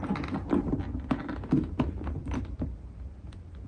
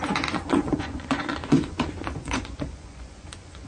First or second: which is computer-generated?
second